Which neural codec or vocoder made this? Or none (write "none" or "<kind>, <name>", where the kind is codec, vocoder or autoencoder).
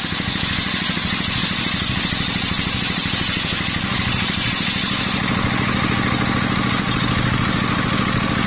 none